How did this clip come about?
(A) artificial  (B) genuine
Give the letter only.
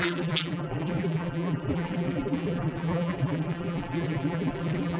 A